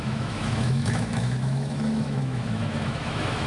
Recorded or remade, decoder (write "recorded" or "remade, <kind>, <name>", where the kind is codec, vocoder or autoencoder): remade, autoencoder, DAC-VAE